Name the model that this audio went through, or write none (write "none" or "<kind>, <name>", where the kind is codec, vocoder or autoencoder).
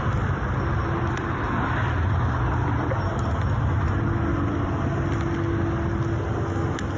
none